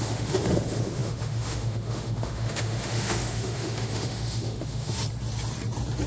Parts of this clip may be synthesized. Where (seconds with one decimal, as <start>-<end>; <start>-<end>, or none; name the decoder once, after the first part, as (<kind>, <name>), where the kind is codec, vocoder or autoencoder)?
0.0-5.0 (autoencoder, DAC-VAE)